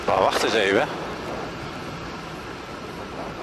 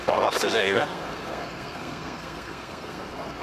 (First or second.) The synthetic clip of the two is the second